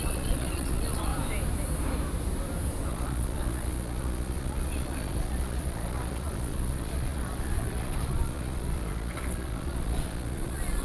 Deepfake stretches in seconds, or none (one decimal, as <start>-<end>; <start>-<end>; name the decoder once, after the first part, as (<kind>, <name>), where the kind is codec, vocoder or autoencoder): 0.0-1.1 (vocoder, Vocos); 2.9-10.8